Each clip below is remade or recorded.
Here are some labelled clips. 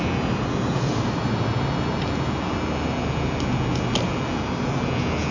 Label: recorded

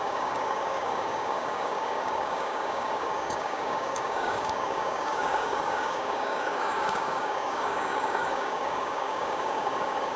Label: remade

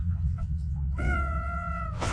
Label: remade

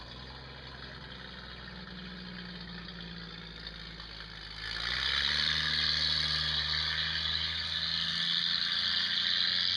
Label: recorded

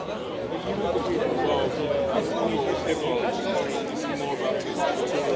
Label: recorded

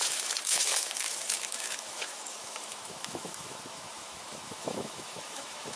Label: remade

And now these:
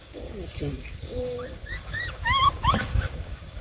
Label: remade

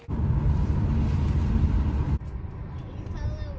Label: recorded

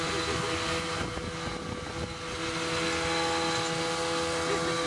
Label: recorded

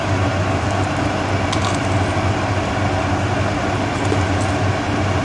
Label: recorded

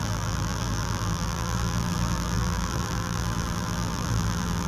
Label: remade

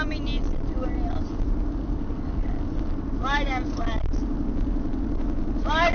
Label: recorded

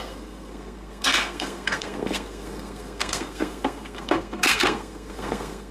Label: remade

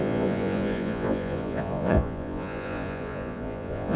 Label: remade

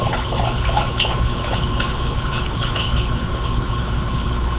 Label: remade